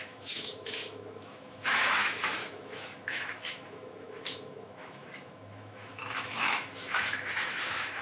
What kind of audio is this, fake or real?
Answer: fake